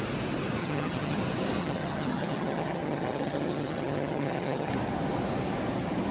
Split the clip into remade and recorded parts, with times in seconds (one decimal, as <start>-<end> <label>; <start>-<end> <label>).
0.0-0.6 recorded; 0.6-1.2 remade; 1.2-1.6 recorded; 1.6-4.7 remade; 4.7-6.1 recorded